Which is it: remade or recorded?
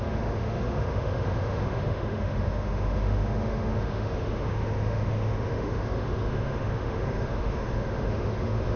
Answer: remade